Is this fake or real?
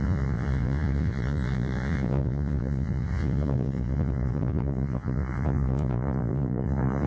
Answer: fake